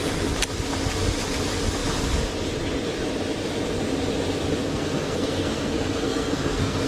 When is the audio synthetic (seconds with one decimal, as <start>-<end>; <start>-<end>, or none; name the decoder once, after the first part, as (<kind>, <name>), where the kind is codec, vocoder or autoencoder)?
4.6-6.9 (codec, SNAC)